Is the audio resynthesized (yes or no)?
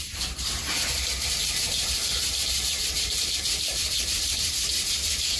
yes